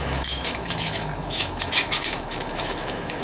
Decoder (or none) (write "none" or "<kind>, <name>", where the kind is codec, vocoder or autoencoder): autoencoder, DAC-VAE